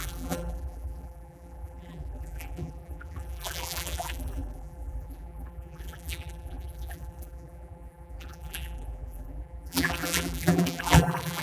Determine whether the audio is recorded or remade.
remade